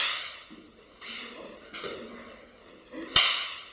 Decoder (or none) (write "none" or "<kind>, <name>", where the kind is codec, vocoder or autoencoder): none